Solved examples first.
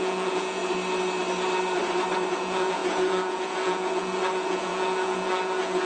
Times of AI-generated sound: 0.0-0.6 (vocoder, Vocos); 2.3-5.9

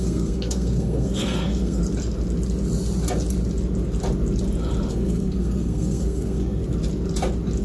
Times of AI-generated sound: 0.0-1.8 (codec, SNAC); 4.9-6.6

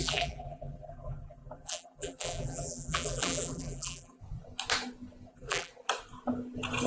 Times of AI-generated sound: 0.0-4.2 (vocoder, BigVGAN v2); 5.3-5.7

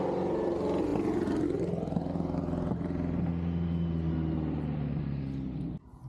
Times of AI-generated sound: none

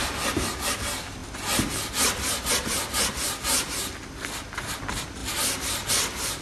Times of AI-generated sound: none

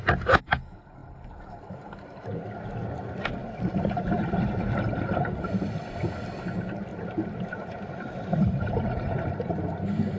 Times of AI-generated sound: 1.0-2.2 (vocoder, BigVGAN v2); 3.4-5.9; 6.9-9.7

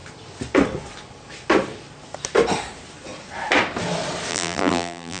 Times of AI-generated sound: 4.3-5.2 (vocoder, BigVGAN v2)